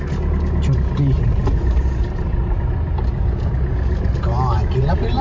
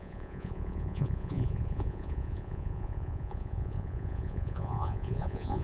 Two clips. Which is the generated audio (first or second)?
second